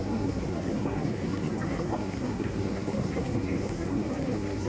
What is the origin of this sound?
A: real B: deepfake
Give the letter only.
B